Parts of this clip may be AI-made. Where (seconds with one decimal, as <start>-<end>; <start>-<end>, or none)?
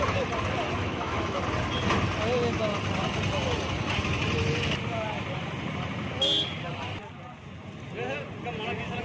0.8-1.4